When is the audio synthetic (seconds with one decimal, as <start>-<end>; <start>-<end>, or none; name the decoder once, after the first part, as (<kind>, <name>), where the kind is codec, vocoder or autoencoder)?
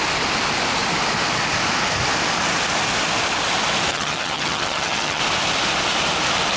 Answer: 3.9-5.2 (vocoder, HiFi-GAN)